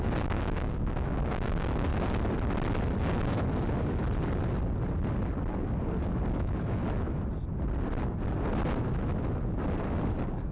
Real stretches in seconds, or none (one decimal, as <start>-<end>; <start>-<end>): 1.9-5.5; 6.8-9.8